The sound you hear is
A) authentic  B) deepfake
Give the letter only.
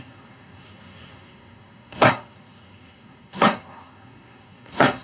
B